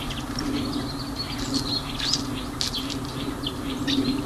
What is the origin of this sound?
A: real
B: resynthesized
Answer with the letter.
A